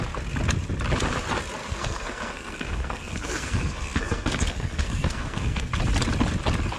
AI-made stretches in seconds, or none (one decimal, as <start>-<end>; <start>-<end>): 1.6-5.7